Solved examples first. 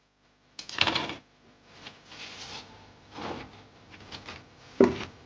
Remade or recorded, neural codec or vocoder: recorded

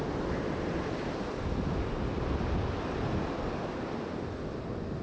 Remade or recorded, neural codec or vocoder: recorded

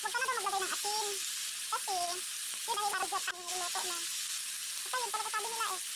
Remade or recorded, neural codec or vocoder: recorded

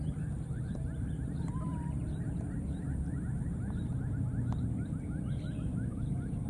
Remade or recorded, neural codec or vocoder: remade, vocoder, BigVGAN v2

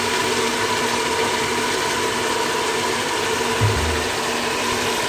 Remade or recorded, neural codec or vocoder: recorded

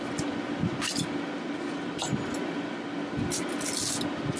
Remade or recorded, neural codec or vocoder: recorded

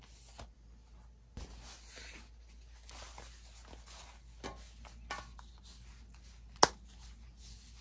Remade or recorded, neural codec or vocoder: recorded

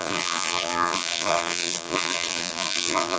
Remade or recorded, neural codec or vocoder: remade, vocoder, BigVGAN v2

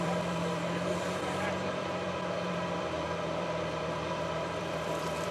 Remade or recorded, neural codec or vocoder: remade, vocoder, BigVGAN v2